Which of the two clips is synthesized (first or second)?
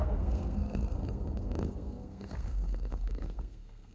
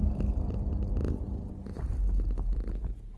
first